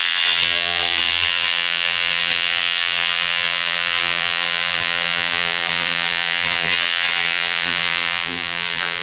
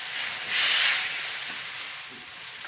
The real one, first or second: second